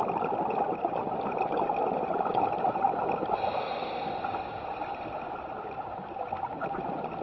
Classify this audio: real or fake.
real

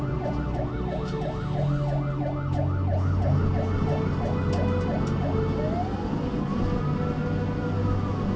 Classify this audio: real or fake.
real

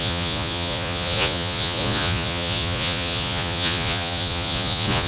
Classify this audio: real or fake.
fake